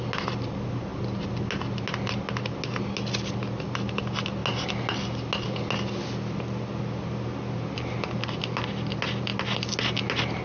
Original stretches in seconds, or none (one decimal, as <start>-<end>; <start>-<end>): 0.0-10.4